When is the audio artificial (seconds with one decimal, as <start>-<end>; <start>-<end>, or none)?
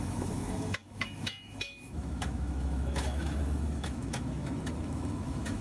0.0-5.6